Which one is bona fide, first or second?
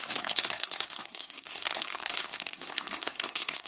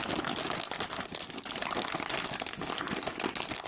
second